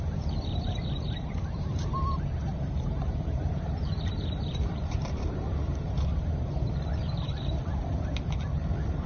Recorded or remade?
remade